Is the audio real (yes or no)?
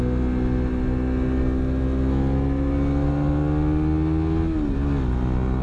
yes